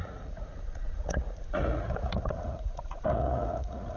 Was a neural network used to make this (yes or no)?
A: yes